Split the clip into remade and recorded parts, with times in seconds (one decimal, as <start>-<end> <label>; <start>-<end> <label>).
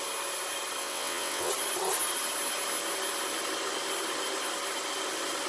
0.0-0.8 recorded; 0.8-1.5 remade; 1.5-5.5 recorded